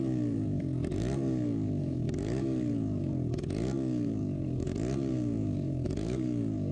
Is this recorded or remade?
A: remade